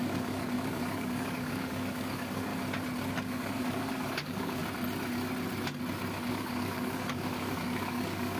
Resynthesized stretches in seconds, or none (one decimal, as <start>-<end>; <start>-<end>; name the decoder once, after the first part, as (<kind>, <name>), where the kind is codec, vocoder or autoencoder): 0.0-2.5 (codec, DAC); 3.1-4.6; 6.3-8.4